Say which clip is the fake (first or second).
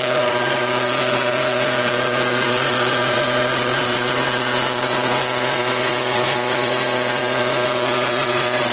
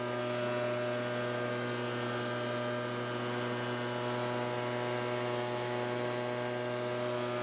first